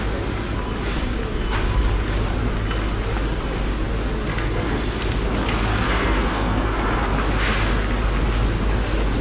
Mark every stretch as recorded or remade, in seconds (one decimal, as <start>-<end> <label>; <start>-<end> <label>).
0.0-4.3 recorded; 4.3-5.1 remade; 5.1-5.7 recorded; 5.7-7.1 remade; 7.1-9.2 recorded